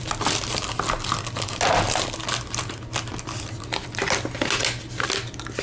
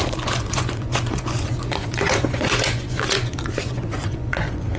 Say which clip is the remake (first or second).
second